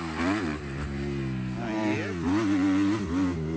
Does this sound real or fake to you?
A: real